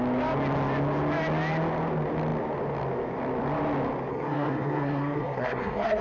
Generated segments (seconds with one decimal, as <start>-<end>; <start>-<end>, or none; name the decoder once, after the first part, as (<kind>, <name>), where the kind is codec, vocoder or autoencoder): 4.1-6.0 (codec, SNAC)

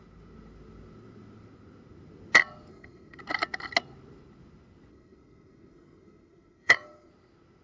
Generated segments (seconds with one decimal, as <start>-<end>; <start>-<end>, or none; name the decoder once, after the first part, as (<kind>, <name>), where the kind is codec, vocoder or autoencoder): 2.7-3.2 (codec, SNAC); 4.9-7.1

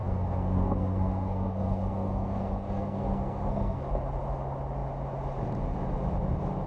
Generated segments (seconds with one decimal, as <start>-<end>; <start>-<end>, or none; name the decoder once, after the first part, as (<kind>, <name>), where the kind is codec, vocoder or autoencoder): 0.0-3.9 (codec, SNAC)

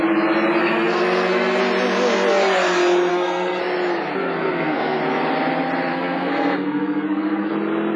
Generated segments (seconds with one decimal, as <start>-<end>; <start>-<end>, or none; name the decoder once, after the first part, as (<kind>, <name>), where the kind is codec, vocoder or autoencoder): 0.6-1.6 (codec, SNAC); 3.1-3.6; 4.2-5.0; 5.9-7.5

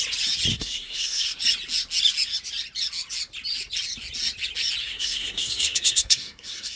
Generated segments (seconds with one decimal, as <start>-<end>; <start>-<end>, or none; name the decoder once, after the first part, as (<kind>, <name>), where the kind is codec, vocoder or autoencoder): 0.5-1.4 (codec, SNAC); 4.8-6.8

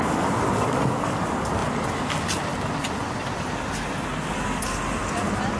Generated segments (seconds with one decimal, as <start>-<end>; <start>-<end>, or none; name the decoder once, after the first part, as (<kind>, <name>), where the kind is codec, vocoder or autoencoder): none

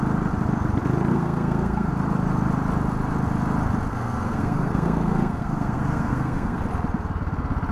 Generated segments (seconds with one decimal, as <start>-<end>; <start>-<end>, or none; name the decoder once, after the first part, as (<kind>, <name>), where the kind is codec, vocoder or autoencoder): 1.1-1.9 (codec, SNAC); 3.9-6.6